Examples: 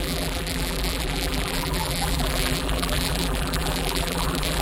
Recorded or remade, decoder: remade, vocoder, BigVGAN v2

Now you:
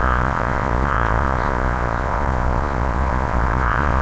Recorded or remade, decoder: remade, vocoder, Vocos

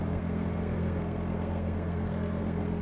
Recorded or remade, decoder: remade, codec, SNAC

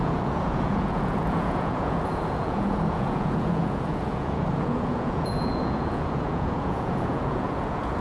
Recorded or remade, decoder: remade, vocoder, Vocos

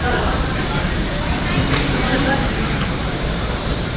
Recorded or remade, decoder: remade, vocoder, BigVGAN v2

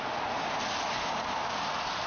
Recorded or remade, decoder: recorded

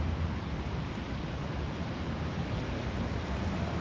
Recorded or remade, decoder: remade, vocoder, BigVGAN v2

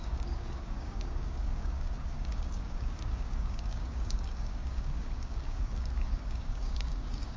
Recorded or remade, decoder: remade, codec, DAC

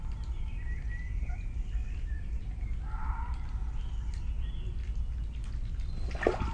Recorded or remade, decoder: recorded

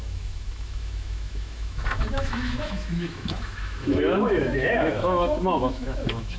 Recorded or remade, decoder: remade, autoencoder, DAC-VAE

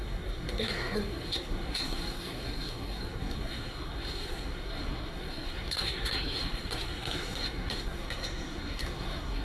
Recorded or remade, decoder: remade, codec, SNAC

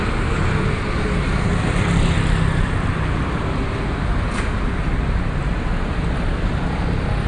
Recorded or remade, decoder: recorded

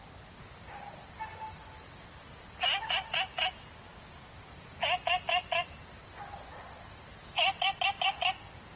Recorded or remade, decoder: recorded